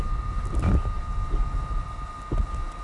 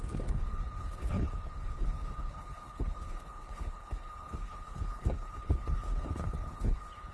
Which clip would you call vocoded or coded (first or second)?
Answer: second